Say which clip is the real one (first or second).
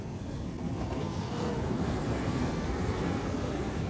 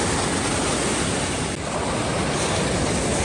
second